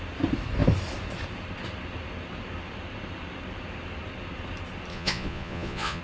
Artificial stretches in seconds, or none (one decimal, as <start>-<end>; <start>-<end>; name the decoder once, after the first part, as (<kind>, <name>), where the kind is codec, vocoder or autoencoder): 4.9-6.0 (vocoder, Vocos)